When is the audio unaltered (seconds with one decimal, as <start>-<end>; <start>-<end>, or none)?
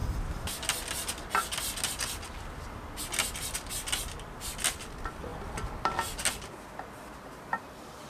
0.0-8.1